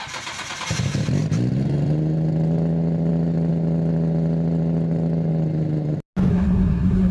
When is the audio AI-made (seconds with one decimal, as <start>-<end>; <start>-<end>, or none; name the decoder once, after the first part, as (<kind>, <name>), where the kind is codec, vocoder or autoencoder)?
6.3-7.1 (codec, SNAC)